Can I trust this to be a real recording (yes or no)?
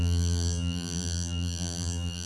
no